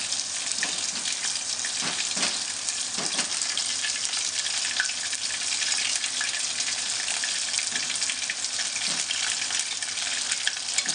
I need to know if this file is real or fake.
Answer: real